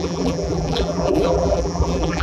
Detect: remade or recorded remade